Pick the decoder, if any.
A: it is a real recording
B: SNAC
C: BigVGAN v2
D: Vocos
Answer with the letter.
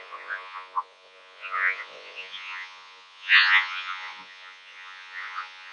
D